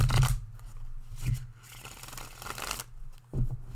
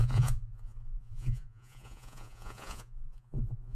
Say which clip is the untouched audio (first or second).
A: first